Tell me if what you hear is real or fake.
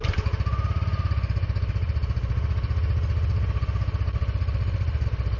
real